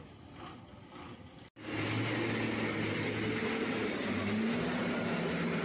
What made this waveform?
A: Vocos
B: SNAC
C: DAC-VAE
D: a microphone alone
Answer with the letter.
D